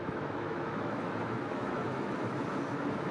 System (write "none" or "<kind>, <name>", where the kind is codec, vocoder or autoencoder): autoencoder, DAC-VAE